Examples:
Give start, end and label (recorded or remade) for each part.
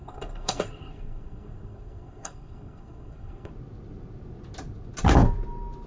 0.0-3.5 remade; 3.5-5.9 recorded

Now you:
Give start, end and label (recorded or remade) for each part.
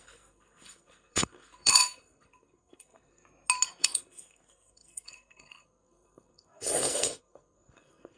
0.0-3.2 remade; 3.2-3.8 recorded; 3.8-8.2 remade